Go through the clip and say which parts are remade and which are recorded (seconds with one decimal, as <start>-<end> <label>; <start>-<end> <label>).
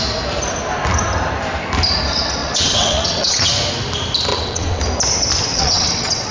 0.0-2.4 recorded; 2.4-3.5 remade; 3.5-4.3 recorded; 4.3-4.8 remade; 4.8-5.5 recorded; 5.5-6.3 remade